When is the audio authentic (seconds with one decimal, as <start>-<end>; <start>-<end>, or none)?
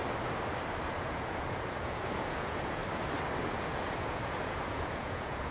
0.0-1.0; 2.8-3.5